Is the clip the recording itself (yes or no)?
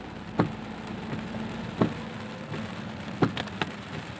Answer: yes